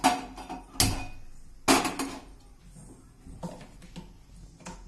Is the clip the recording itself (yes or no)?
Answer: yes